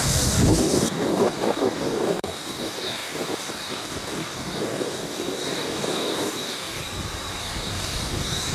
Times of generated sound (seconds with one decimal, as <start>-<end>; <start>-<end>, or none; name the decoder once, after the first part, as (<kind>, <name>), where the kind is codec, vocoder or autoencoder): 0.0-6.8 (codec, DAC); 7.4-8.5